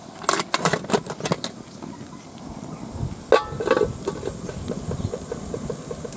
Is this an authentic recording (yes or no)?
yes